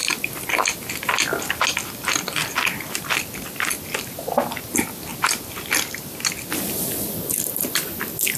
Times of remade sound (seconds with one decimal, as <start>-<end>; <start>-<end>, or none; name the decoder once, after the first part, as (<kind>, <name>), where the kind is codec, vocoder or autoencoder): none